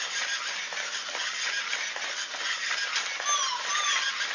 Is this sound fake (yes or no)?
no